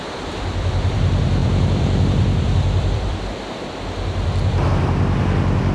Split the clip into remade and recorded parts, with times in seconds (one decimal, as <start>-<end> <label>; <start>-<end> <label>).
0.0-5.7 remade